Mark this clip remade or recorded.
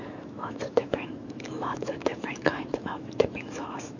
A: remade